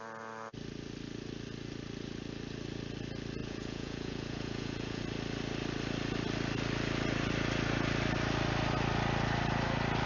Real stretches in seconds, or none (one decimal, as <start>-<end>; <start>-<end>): 0.0-3.4; 5.0-10.1